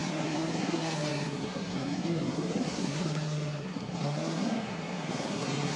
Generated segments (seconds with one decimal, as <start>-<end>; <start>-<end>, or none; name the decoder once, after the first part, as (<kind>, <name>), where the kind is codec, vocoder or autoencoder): 0.0-5.8 (codec, SNAC)

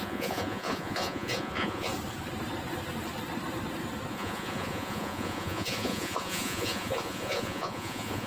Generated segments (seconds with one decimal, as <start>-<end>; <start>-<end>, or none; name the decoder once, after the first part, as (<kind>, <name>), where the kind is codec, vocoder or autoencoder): 0.0-1.9 (vocoder, Vocos); 4.1-8.3

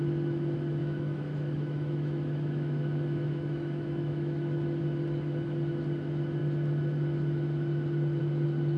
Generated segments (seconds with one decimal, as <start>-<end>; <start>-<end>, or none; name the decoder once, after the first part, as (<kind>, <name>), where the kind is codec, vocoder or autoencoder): 0.8-4.8 (autoencoder, DAC-VAE)

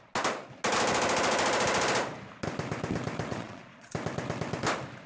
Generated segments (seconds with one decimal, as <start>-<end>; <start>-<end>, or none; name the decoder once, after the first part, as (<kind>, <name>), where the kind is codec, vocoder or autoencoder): 3.3-3.9 (vocoder, Vocos)

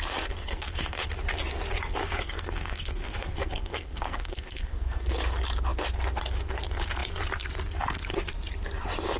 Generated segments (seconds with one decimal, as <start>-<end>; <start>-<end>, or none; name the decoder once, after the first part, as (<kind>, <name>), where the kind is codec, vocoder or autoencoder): 0.4-1.1 (codec, SNAC); 2.0-5.1

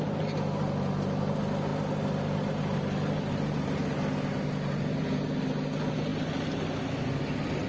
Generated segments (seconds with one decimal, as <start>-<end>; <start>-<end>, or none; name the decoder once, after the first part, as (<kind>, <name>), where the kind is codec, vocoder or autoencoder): none

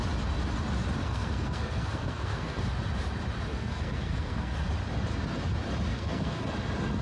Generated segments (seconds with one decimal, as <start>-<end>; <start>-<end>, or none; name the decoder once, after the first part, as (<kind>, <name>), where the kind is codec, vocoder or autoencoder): 1.0-2.6 (codec, SNAC); 3.5-4.7; 5.9-6.5